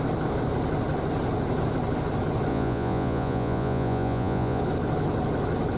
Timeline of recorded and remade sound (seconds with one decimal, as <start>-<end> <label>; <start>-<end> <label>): 0.0-2.5 recorded; 2.5-4.6 remade; 4.6-5.8 recorded